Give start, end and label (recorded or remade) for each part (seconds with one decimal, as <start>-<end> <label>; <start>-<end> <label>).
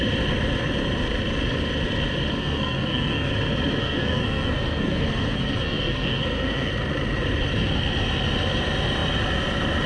0.0-2.4 recorded; 2.4-3.3 remade; 3.3-3.8 recorded; 3.8-6.7 remade; 6.7-9.9 recorded